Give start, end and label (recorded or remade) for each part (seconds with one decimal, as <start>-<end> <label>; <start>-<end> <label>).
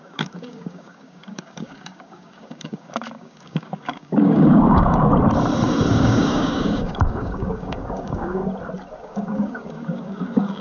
0.0-5.1 remade; 5.1-5.9 recorded; 5.9-8.4 remade; 8.4-9.0 recorded; 9.0-10.6 remade